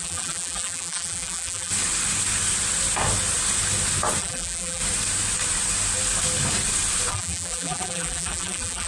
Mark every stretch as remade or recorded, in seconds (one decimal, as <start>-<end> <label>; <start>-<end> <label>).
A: 0.0-1.7 remade; 1.7-4.2 recorded; 4.2-4.8 remade; 4.8-7.1 recorded; 7.1-8.9 remade